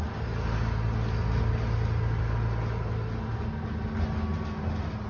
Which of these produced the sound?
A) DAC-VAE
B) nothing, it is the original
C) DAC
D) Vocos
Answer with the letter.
B